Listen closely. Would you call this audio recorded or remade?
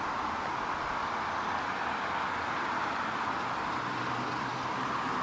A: recorded